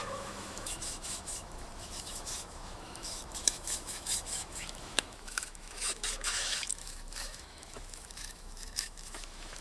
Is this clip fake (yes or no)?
yes